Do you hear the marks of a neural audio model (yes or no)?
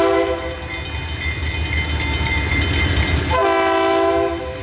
no